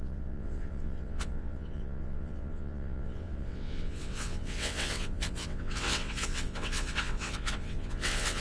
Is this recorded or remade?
remade